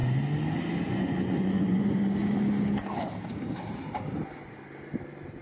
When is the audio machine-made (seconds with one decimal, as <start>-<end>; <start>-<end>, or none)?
0.9-2.0